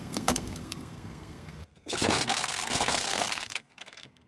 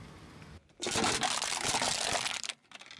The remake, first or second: first